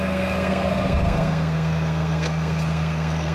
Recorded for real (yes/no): no